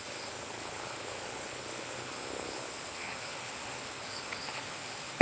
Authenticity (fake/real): fake